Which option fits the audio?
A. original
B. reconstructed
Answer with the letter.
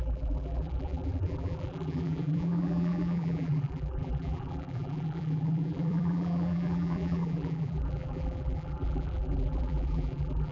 B